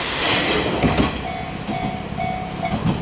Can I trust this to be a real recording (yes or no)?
yes